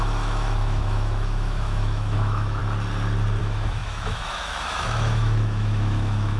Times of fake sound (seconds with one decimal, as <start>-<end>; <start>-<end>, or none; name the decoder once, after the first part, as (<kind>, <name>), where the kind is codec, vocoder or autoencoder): 0.0-2.6 (autoencoder, DAC-VAE); 3.4-6.4